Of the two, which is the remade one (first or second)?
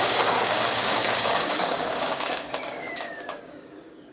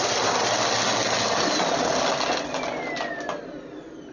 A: first